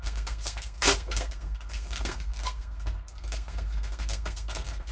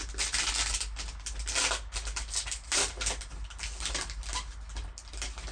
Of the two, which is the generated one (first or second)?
first